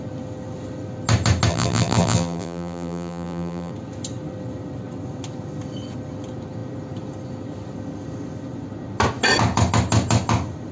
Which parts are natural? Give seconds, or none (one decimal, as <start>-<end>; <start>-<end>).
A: 0.0-1.5; 3.7-10.7